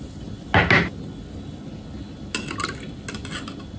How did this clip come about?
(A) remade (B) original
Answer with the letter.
B